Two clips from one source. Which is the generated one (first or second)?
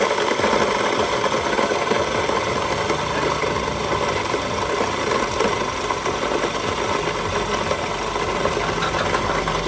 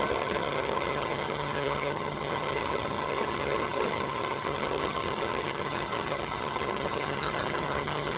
second